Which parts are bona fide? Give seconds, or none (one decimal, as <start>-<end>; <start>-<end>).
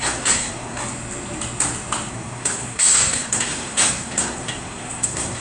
0.8-2.1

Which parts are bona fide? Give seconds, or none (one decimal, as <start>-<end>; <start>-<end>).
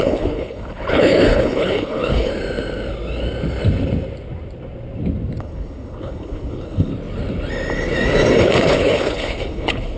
2.3-5.4; 6.9-8.4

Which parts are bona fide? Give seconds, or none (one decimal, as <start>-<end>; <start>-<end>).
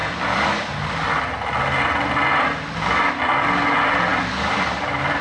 0.0-5.2